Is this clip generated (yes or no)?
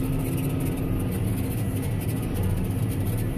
no